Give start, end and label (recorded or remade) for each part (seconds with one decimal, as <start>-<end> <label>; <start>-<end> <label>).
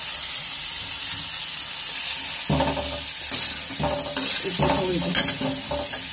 0.0-6.1 recorded